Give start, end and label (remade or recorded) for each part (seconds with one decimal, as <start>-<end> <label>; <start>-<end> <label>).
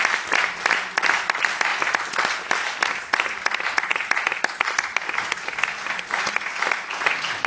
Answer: 0.0-7.5 recorded